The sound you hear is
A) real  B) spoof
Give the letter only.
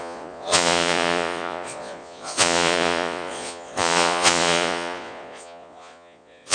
B